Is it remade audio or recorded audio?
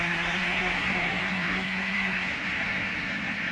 remade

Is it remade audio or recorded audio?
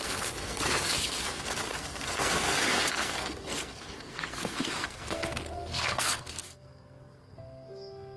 remade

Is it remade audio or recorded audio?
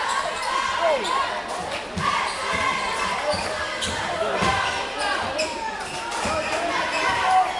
recorded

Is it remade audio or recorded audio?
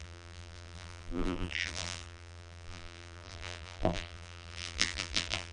remade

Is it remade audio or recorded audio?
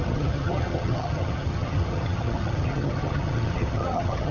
remade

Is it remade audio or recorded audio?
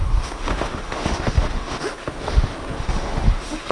remade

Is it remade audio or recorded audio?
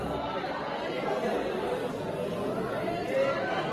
recorded